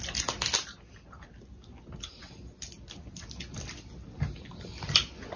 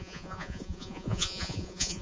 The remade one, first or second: second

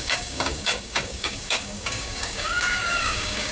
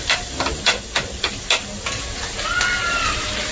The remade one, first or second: first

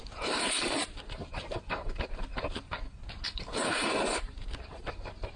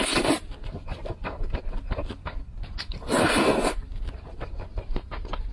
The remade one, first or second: first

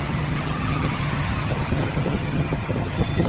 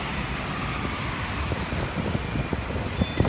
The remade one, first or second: first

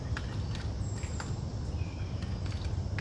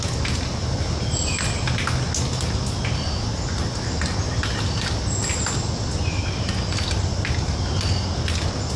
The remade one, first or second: first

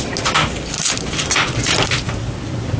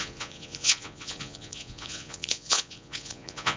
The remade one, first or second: second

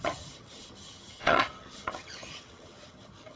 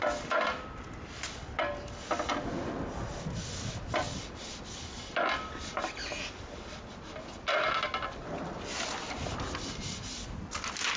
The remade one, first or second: first